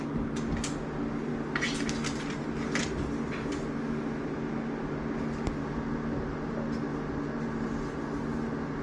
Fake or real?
real